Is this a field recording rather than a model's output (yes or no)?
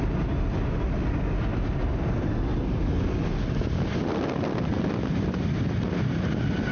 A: yes